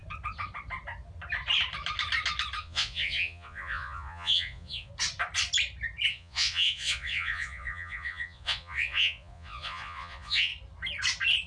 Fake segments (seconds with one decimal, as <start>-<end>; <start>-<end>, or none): 2.6-4.9; 6.1-10.5